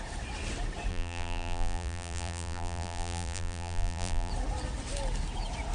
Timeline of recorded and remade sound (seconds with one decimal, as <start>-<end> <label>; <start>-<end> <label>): 0.0-0.9 recorded; 0.9-4.3 remade; 4.3-5.7 recorded